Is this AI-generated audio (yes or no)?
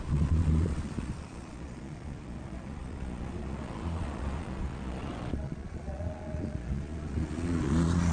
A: yes